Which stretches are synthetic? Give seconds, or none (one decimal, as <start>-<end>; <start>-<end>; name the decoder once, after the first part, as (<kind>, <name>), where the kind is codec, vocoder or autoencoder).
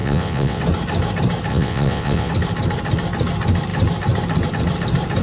0.0-0.6 (vocoder, WaveNeXt); 1.5-2.3